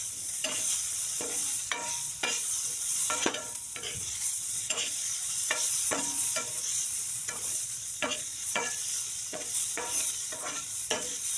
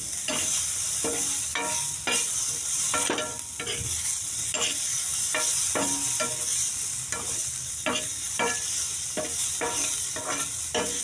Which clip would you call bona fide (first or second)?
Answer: second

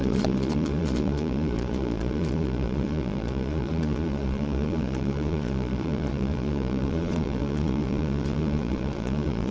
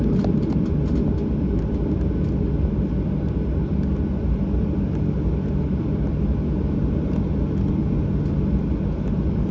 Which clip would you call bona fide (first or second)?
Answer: second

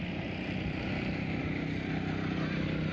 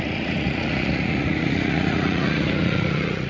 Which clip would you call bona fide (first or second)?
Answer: first